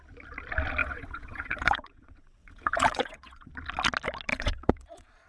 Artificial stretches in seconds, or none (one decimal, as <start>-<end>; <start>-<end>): 0.8-3.5; 4.3-5.3